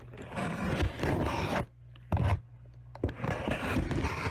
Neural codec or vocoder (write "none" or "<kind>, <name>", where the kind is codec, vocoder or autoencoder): none